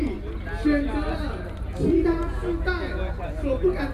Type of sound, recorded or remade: recorded